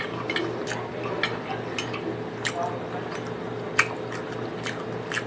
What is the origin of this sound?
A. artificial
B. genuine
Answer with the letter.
B